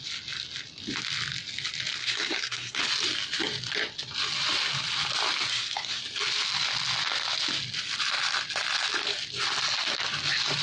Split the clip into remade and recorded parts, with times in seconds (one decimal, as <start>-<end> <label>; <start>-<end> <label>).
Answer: 0.0-2.0 recorded; 2.0-2.8 remade; 2.8-5.5 recorded; 5.5-6.0 remade; 6.0-10.6 recorded